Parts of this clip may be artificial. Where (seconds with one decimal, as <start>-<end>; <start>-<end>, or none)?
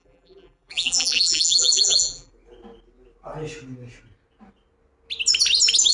0.0-2.3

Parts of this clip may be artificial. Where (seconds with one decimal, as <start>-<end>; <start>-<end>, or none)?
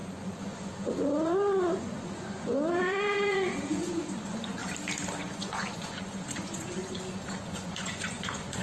0.0-4.6; 5.2-8.6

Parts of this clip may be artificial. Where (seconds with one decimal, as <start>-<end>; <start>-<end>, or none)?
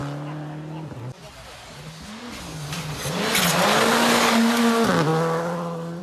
3.9-4.6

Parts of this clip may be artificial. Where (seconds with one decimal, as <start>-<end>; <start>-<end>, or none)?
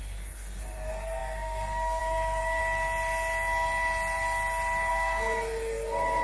0.0-2.6; 4.9-6.2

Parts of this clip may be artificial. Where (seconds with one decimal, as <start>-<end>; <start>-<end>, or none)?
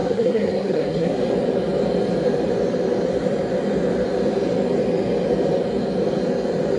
0.0-1.2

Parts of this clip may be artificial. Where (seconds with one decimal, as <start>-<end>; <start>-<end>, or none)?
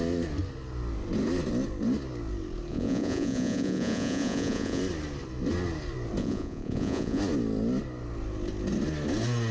2.7-4.8; 6.2-7.2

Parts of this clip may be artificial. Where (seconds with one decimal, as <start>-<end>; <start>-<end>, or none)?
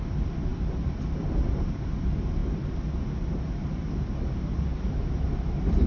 none